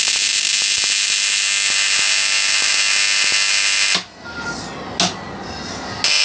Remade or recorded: recorded